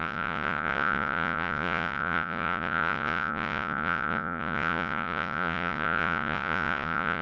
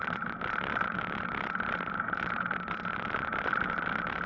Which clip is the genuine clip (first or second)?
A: second